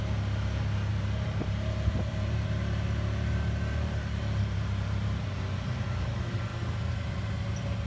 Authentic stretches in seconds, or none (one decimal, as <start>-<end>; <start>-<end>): 0.0-0.9; 5.4-7.9